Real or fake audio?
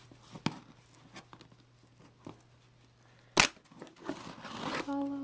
real